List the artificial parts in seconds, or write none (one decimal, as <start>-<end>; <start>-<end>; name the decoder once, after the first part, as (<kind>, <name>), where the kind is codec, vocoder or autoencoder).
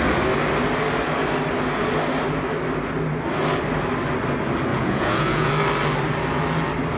4.7-5.5 (vocoder, Vocos)